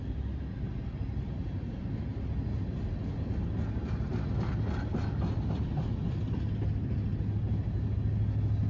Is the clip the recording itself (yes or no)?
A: yes